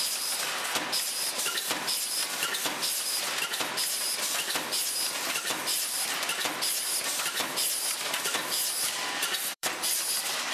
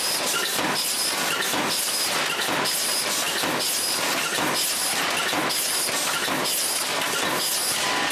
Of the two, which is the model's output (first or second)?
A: first